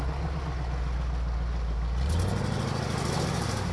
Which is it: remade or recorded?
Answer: recorded